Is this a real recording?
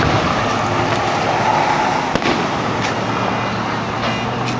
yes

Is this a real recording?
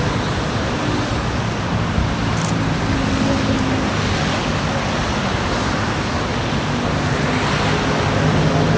yes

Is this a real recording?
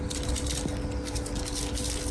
yes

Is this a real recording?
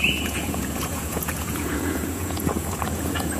no